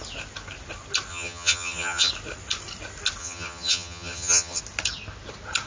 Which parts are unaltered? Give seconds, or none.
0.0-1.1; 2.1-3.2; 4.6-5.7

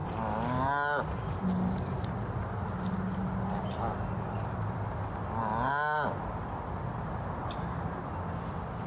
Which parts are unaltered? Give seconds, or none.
0.0-8.9

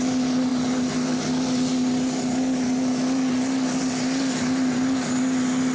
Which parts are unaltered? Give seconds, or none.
0.0-5.7